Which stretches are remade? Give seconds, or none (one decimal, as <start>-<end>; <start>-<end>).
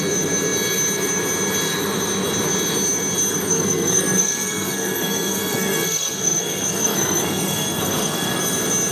3.5-8.4